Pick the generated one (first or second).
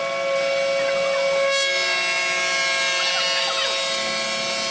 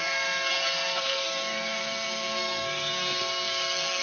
second